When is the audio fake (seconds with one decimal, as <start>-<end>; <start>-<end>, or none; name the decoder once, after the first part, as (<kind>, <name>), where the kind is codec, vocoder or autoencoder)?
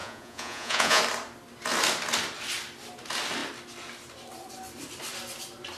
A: 0.0-1.0 (vocoder, Vocos)